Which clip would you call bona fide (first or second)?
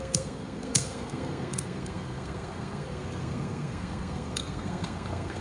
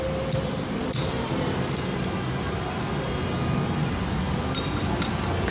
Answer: second